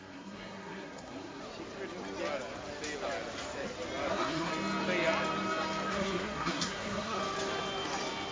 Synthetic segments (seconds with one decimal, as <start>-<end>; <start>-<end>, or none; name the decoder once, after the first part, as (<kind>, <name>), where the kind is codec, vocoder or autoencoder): 0.0-1.4 (codec, SNAC); 4.1-4.5; 5.9-7.2